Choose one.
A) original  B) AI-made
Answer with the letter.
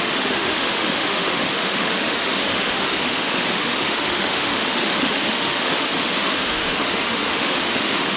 B